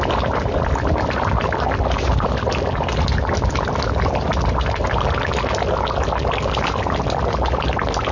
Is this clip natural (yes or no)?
yes